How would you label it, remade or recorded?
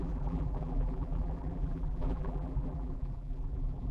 remade